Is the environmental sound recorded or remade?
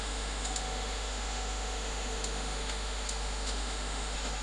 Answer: remade